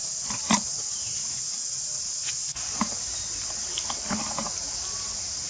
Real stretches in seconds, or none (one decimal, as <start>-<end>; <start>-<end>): 1.5-5.5